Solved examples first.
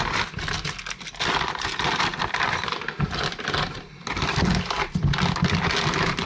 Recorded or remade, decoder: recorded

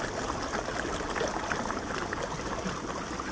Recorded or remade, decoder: recorded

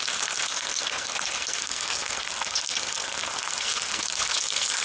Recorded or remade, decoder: remade, codec, SNAC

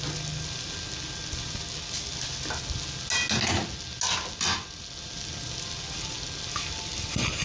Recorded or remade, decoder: recorded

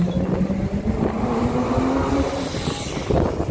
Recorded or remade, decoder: recorded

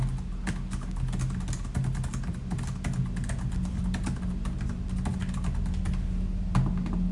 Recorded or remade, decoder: recorded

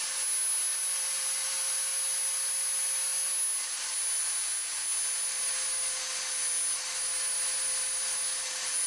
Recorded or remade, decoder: recorded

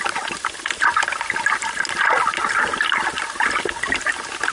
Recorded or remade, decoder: recorded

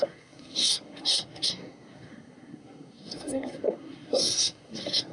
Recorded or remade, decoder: remade, codec, SNAC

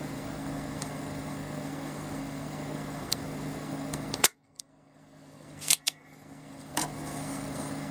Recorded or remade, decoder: remade, codec, SNAC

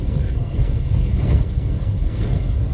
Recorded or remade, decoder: remade, codec, SNAC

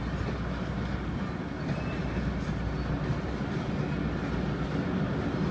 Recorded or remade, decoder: recorded